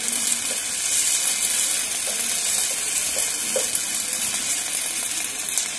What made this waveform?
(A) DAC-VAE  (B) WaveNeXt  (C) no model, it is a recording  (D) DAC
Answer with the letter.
C